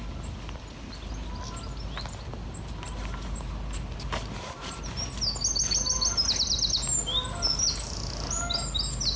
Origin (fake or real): real